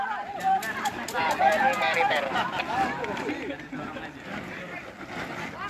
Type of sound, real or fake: real